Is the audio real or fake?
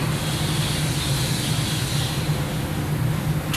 real